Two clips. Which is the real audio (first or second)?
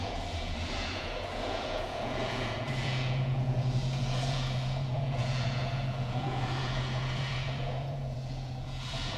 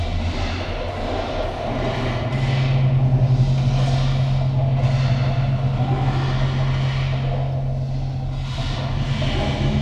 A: second